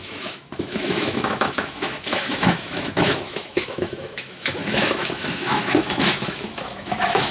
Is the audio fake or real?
fake